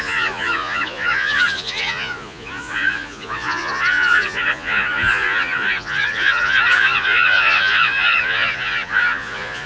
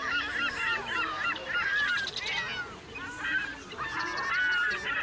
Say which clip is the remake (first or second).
first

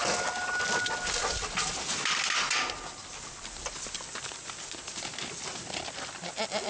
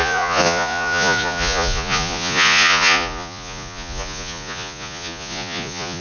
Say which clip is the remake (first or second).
second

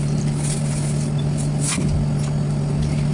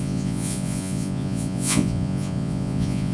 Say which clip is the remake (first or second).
second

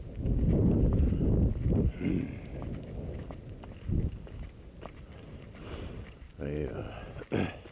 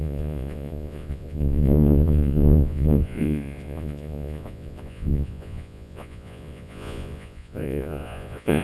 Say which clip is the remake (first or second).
second